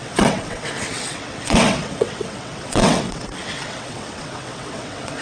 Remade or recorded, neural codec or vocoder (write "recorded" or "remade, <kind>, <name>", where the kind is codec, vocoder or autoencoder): remade, vocoder, WaveNeXt